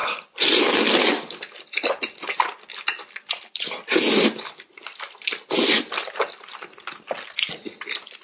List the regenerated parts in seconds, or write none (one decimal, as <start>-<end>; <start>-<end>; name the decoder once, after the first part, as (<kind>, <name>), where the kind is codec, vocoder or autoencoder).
none

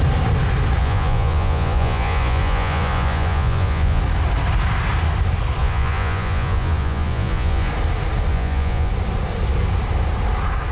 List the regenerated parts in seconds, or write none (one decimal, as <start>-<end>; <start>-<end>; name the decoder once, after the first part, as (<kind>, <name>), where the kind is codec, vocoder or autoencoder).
0.8-4.0 (vocoder, Vocos); 5.6-7.7; 8.3-8.9

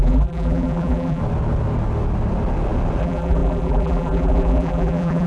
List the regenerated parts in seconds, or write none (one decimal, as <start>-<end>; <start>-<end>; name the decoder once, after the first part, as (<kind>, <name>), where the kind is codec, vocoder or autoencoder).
0.0-1.2 (vocoder, BigVGAN v2); 3.0-5.3